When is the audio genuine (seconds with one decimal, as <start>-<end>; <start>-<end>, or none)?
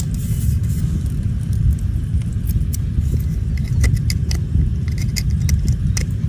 0.0-6.3